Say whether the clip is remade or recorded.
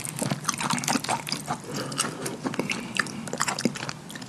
recorded